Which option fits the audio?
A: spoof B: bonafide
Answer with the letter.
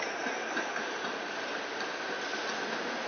B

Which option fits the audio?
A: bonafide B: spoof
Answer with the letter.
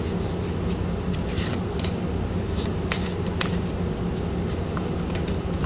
A